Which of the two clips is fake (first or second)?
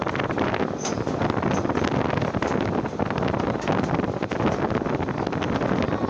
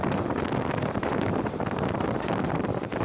second